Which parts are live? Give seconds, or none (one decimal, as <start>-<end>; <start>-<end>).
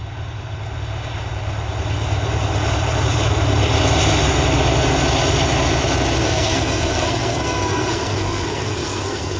0.0-6.2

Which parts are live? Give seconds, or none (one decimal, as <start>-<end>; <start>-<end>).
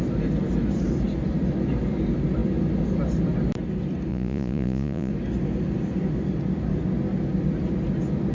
0.0-4.1; 5.1-8.3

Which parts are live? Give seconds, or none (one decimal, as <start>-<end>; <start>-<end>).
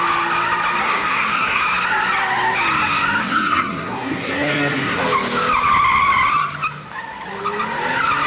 0.0-0.8; 1.6-3.2; 5.0-8.3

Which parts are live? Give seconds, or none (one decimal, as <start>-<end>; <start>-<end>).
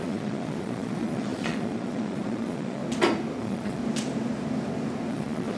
2.8-3.4; 3.8-5.1